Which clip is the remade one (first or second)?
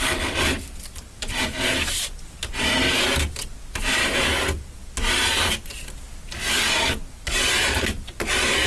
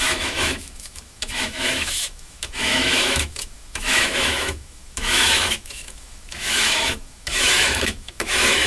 second